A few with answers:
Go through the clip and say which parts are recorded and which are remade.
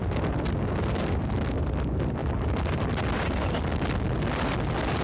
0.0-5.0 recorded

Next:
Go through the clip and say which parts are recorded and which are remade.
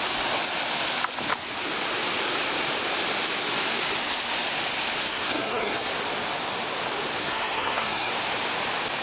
0.0-5.0 recorded; 5.0-5.9 remade; 5.9-7.2 recorded; 7.2-8.1 remade; 8.1-9.0 recorded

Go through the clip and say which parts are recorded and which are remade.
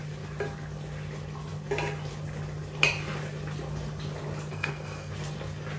0.0-4.5 recorded; 4.5-5.1 remade; 5.1-5.8 recorded